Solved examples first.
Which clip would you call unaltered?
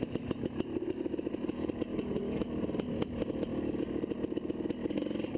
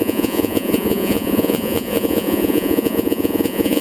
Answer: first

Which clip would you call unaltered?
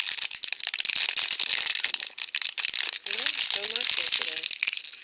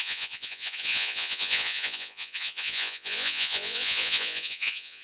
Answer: first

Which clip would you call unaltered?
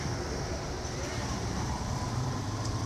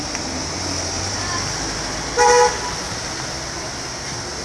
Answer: second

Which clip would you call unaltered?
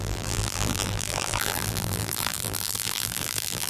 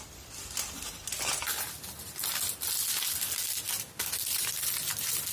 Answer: second